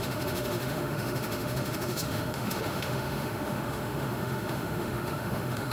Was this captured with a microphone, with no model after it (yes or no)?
no